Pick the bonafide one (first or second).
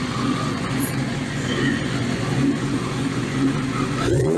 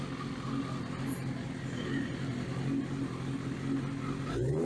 second